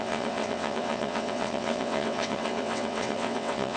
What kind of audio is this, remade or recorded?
remade